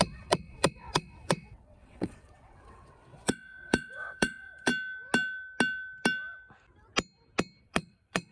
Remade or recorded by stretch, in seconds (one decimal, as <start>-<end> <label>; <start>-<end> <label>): 0.0-4.7 remade; 4.7-7.6 recorded; 7.6-8.3 remade